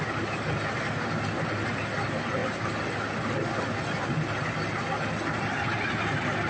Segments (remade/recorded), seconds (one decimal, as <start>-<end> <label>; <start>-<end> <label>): 0.0-6.5 recorded